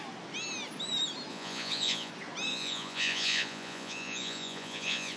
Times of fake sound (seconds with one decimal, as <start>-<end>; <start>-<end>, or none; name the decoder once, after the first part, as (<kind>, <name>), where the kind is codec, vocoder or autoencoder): 1.3-2.1 (vocoder, Vocos); 2.5-5.2